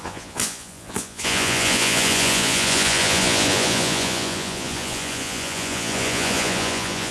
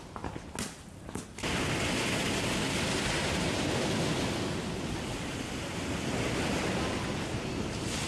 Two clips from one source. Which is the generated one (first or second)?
first